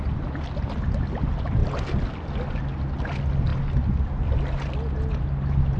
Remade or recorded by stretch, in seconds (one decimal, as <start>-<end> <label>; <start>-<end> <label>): 0.0-5.8 recorded